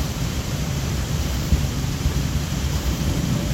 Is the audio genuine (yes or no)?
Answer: no